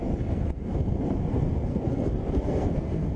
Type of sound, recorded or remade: remade